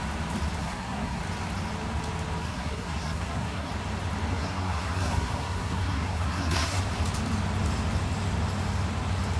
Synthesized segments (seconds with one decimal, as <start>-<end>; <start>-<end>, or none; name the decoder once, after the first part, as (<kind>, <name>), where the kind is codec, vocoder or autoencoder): 0.6-1.2 (codec, SNAC); 2.4-3.7; 4.3-6.8